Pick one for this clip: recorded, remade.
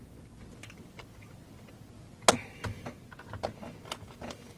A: recorded